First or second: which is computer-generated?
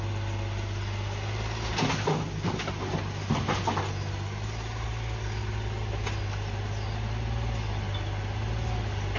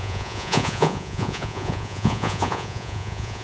second